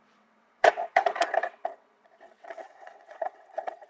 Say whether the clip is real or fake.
fake